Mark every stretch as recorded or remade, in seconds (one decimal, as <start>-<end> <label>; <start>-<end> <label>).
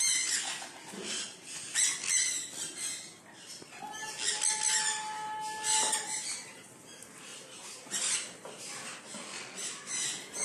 0.0-7.3 recorded; 7.3-9.0 remade; 9.0-10.4 recorded